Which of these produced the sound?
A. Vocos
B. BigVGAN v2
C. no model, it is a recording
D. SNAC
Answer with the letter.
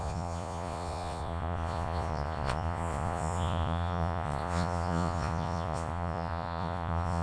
A